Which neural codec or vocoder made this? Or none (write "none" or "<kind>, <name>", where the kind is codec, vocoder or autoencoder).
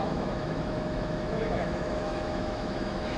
autoencoder, DAC-VAE